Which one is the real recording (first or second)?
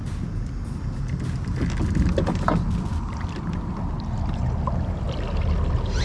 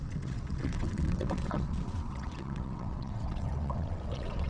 first